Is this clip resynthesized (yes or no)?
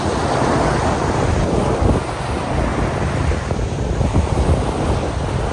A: no